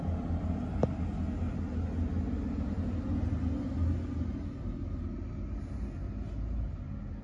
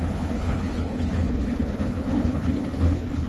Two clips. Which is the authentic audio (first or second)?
first